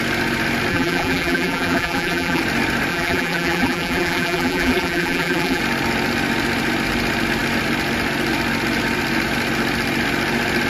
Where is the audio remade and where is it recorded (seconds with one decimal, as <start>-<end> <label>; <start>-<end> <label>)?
0.0-0.7 recorded; 0.7-2.4 remade; 2.4-2.9 recorded; 2.9-5.6 remade; 5.6-10.7 recorded